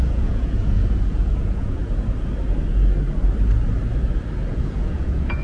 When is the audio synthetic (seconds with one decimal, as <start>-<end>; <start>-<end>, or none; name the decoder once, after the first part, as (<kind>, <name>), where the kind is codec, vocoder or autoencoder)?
0.0-1.8 (vocoder, Vocos); 4.5-5.4